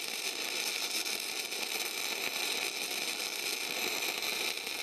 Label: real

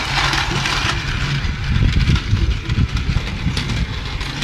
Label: real